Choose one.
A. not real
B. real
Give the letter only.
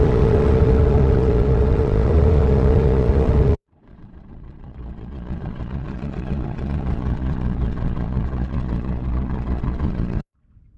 A